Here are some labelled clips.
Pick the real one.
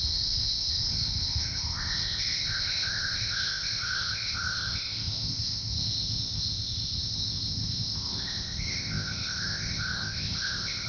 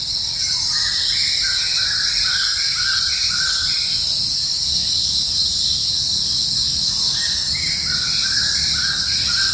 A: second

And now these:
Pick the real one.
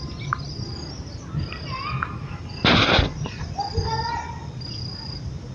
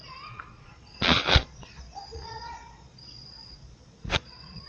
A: first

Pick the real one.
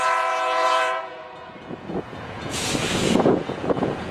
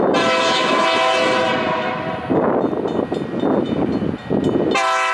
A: second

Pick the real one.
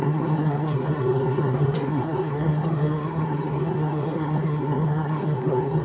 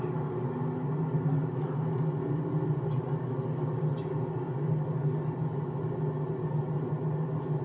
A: second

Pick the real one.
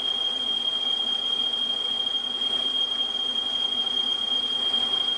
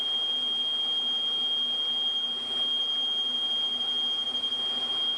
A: second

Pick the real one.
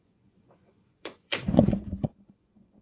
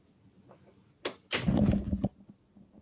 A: second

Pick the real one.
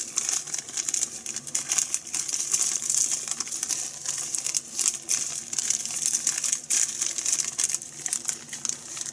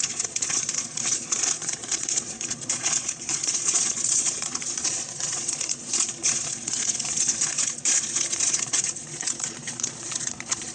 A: first